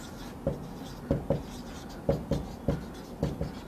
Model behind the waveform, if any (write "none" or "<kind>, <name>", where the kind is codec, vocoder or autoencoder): none